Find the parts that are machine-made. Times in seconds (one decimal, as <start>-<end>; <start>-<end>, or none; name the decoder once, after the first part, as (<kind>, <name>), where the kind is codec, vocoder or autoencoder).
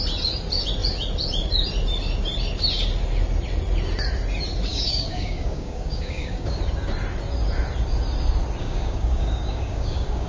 4.7-6.6 (codec, DAC); 8.6-10.3